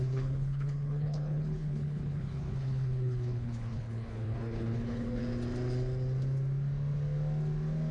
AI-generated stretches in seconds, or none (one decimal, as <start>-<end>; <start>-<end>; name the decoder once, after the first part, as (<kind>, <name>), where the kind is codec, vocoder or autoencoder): 0.0-5.2 (codec, HILCodec)